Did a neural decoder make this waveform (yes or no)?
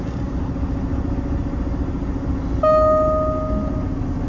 no